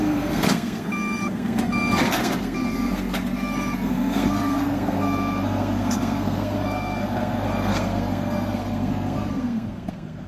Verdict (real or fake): fake